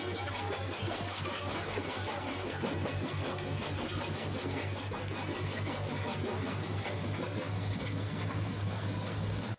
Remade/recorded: remade